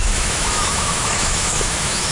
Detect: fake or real fake